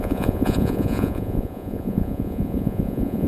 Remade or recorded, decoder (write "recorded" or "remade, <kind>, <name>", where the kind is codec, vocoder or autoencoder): remade, vocoder, Vocos